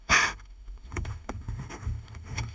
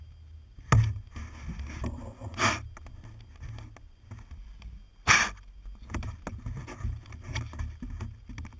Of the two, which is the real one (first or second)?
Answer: second